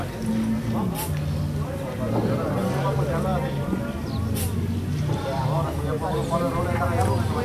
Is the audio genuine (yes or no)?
yes